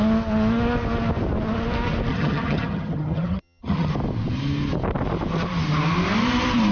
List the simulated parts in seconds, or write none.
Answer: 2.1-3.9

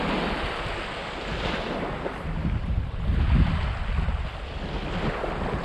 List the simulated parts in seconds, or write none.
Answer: none

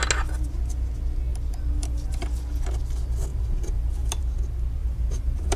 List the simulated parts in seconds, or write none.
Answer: 1.3-2.1; 3.3-4.2; 4.8-5.6